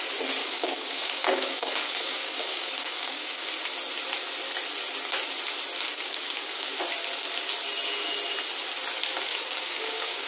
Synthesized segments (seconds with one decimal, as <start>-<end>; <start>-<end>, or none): 0.4-3.5; 5.9-6.7; 9.3-10.3